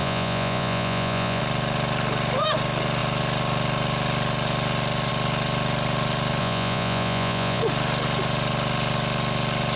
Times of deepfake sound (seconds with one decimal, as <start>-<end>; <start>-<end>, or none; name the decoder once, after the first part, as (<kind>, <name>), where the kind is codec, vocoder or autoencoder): 0.0-1.4 (vocoder, Vocos); 6.4-7.6